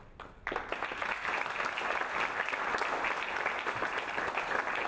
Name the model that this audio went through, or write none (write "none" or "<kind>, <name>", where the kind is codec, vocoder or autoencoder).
none